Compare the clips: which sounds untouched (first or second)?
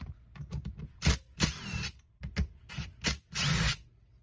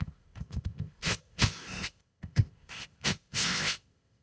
first